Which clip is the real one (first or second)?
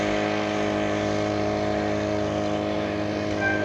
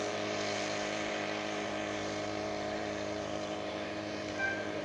first